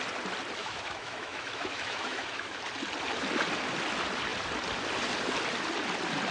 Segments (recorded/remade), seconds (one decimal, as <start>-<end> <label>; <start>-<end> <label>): 0.0-0.6 recorded; 0.6-2.6 remade; 2.6-6.3 recorded